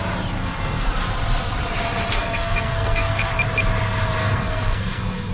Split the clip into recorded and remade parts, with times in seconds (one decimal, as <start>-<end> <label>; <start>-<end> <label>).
0.0-0.4 recorded; 0.4-0.9 remade; 0.9-2.1 recorded; 2.1-3.3 remade; 3.3-4.2 recorded; 4.2-5.3 remade